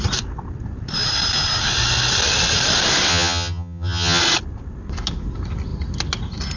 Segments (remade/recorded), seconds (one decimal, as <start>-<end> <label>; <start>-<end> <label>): 0.0-3.1 recorded; 3.1-4.2 remade; 4.2-6.6 recorded